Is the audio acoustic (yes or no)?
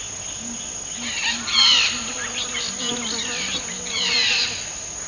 yes